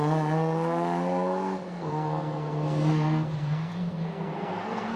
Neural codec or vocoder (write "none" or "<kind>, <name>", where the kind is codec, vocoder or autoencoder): codec, SNAC